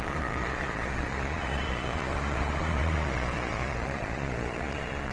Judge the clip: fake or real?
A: fake